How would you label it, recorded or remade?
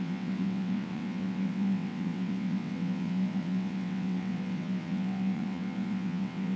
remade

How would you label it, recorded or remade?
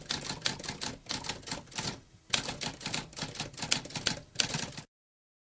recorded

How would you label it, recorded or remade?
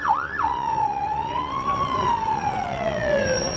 remade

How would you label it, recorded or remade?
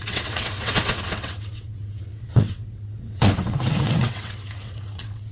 remade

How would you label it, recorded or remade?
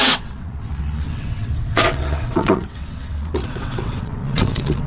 remade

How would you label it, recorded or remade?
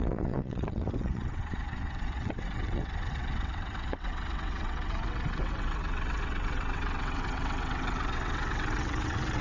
remade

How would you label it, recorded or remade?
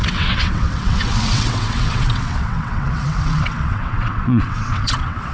remade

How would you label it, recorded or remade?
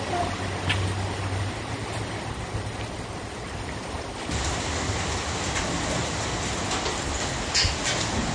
recorded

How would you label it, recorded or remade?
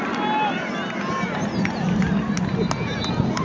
recorded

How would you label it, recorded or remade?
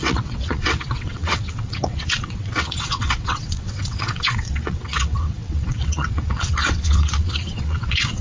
remade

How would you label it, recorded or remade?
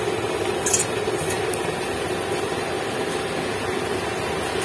recorded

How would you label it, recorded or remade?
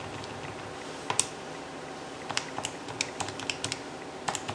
recorded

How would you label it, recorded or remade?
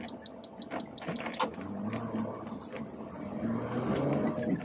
recorded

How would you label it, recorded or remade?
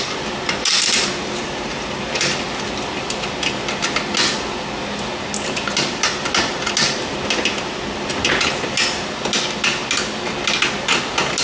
recorded